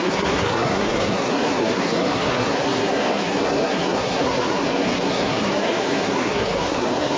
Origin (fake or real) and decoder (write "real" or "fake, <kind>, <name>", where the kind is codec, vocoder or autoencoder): fake, codec, SNAC